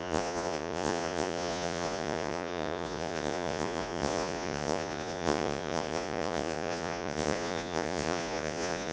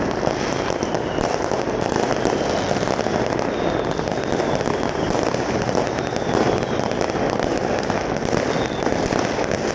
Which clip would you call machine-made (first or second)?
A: first